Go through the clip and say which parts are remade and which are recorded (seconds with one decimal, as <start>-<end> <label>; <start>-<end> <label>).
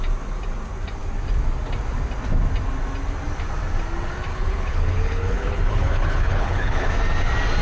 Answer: 0.0-4.3 recorded; 4.3-6.9 remade; 6.9-7.6 recorded